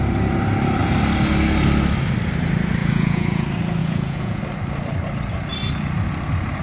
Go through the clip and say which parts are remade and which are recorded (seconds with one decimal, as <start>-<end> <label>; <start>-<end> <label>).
0.0-2.8 recorded; 2.8-3.4 remade; 3.4-3.8 recorded; 3.8-4.4 remade; 4.4-6.6 recorded